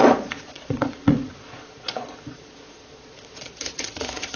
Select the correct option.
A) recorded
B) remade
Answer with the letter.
B